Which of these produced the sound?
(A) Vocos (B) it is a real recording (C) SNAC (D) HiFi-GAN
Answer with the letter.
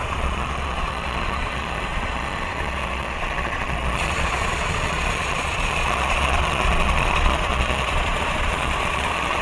A